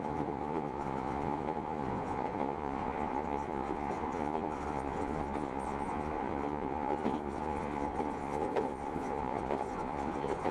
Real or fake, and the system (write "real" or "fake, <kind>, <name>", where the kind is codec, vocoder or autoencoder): fake, vocoder, Vocos